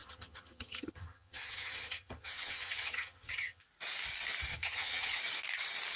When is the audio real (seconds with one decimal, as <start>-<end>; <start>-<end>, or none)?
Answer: 3.6-4.5; 5.2-6.0